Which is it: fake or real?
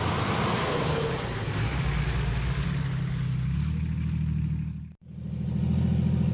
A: real